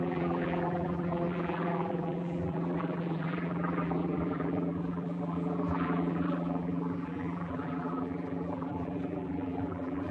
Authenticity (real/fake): fake